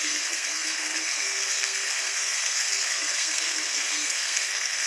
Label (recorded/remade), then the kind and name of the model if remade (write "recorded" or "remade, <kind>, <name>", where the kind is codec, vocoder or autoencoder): remade, codec, SNAC